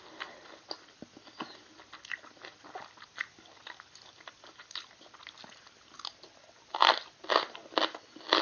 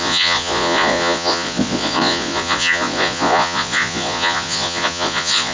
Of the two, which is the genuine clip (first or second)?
first